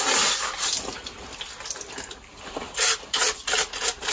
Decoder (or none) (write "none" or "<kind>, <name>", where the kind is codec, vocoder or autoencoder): none